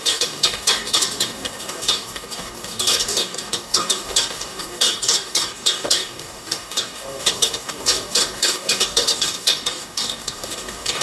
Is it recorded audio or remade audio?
remade